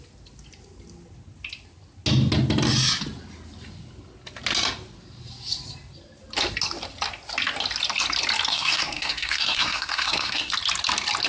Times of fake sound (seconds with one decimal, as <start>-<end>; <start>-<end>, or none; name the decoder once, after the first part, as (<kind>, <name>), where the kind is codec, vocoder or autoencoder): 8.5-10.5 (codec, SNAC)